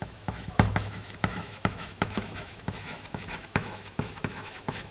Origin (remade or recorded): remade